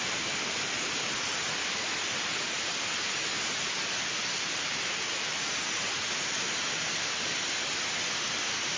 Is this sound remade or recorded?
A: recorded